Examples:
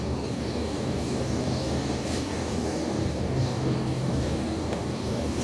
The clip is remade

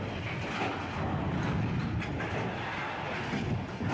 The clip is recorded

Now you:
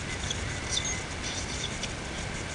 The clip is recorded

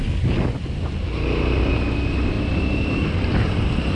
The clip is recorded